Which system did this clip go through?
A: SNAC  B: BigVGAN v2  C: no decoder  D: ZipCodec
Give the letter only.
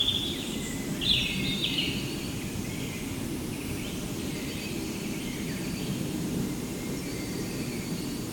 B